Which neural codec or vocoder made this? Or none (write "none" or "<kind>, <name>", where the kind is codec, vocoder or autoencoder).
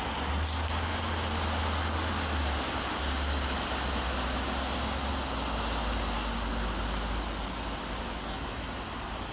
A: none